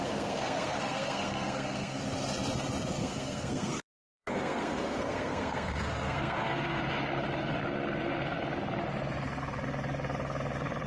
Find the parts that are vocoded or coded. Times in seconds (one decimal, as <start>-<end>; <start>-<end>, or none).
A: 0.0-2.0; 3.0-6.8